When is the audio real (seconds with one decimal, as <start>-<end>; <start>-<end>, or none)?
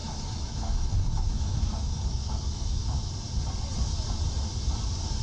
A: 3.1-5.2